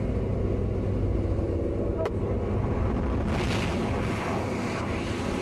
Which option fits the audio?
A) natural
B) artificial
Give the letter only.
A